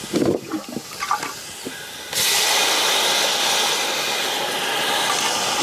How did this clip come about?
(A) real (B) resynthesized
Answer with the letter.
A